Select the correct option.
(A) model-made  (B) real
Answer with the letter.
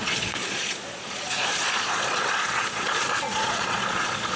A